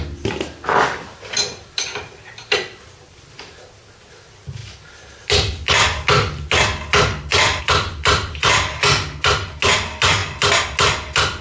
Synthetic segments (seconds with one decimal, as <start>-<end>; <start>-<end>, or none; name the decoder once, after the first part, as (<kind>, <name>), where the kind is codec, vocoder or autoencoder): none